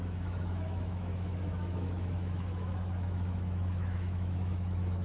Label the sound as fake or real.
fake